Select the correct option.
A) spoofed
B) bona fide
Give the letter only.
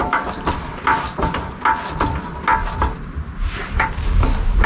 B